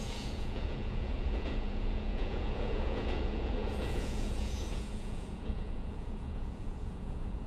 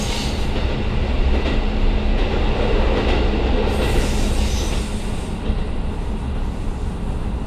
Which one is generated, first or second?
first